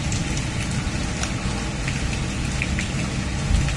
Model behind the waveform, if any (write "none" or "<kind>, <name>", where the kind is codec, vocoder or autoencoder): none